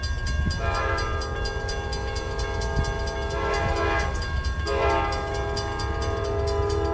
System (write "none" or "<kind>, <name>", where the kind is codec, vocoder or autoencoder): none